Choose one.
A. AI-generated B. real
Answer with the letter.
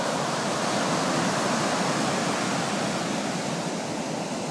B